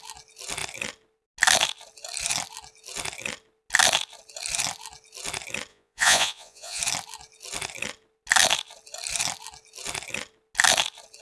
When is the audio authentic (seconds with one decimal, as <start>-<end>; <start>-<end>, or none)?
0.0-5.7; 6.8-11.2